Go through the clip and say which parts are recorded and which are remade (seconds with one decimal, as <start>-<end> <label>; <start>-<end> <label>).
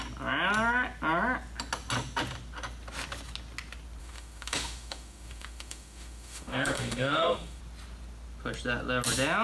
0.0-4.0 recorded; 4.0-7.6 remade; 7.6-9.4 recorded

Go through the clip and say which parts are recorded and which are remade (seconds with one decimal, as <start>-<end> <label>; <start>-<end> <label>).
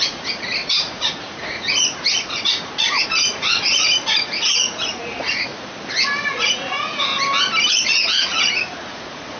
0.0-5.5 remade; 5.5-6.2 recorded; 6.2-7.1 remade; 7.1-7.7 recorded; 7.7-9.4 remade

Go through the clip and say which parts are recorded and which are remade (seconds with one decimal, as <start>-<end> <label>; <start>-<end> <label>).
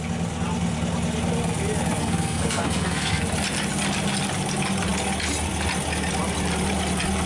0.0-2.0 recorded; 2.0-3.2 remade; 3.2-7.3 recorded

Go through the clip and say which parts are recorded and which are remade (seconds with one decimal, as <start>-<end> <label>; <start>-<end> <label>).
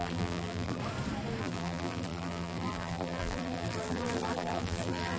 0.0-0.8 remade; 0.8-1.4 recorded; 1.4-5.2 remade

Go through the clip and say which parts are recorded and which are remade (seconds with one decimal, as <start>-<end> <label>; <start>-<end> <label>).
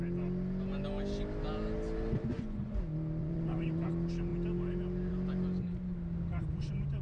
0.0-2.3 recorded; 2.3-2.8 remade; 2.8-3.2 recorded; 3.2-3.9 remade; 3.9-7.0 recorded